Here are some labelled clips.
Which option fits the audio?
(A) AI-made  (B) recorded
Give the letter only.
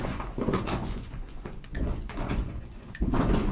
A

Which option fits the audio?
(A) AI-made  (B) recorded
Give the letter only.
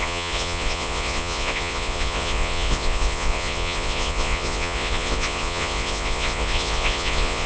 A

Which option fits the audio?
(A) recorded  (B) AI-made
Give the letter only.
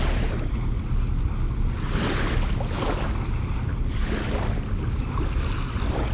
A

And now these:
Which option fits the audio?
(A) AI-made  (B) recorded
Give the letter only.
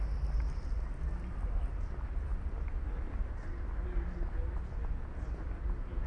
B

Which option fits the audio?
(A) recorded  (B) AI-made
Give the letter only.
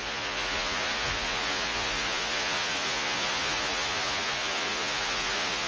B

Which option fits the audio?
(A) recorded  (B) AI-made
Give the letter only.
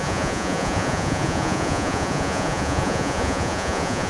B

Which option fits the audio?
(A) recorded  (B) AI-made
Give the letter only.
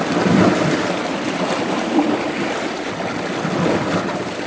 A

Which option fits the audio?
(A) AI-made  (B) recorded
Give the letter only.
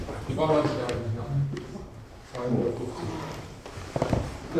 B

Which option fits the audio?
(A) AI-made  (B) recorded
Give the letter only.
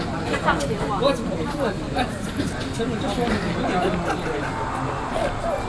B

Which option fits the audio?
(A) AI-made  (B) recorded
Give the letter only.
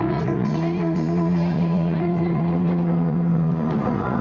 A